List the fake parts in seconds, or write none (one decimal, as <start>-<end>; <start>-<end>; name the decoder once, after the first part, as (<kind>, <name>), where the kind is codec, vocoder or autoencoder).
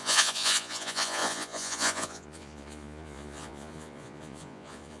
0.0-5.0 (vocoder, Vocos)